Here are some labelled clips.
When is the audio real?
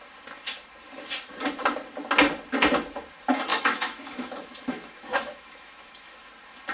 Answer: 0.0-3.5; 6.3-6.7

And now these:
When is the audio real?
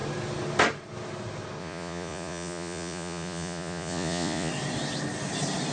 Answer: 0.0-1.6; 4.5-5.7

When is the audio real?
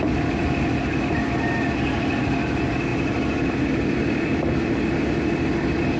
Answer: 0.0-6.0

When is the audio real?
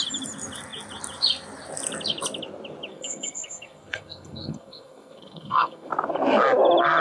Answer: 0.0-2.9; 5.9-7.0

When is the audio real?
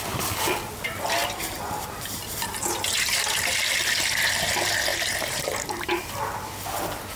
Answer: 0.0-1.2; 2.8-4.9; 6.1-7.2